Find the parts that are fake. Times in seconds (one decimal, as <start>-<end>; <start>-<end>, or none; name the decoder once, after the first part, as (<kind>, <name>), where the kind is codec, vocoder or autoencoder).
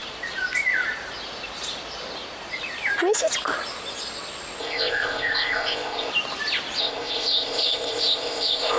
4.6-6.1 (codec, ZipCodec); 6.8-8.8